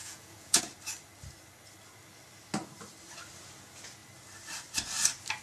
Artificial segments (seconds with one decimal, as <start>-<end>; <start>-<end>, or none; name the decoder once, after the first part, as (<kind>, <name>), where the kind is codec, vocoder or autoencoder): 0.0-0.6 (vocoder, Vocos)